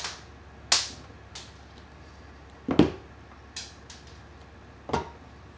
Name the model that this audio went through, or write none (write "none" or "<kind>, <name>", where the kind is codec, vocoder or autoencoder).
none